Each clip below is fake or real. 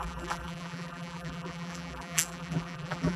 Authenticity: fake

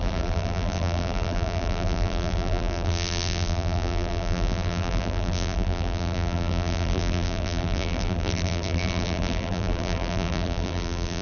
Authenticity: fake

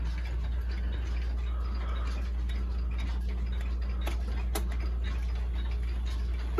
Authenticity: real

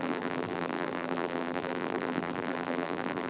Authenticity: fake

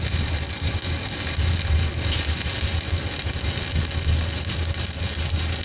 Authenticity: real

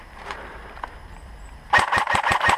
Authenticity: fake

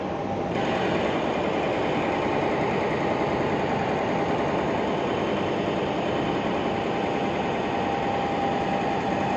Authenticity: real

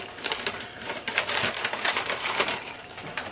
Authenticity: fake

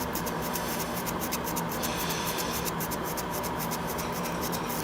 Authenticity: fake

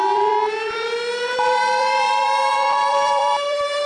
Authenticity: fake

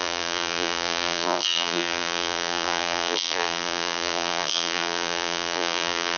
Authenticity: fake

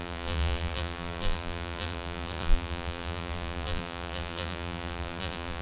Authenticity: fake